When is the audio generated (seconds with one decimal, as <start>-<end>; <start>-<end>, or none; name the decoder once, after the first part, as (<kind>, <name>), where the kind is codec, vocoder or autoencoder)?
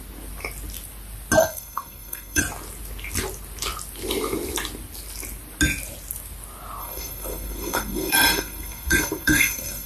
1.4-2.4 (codec, SNAC); 6.8-9.9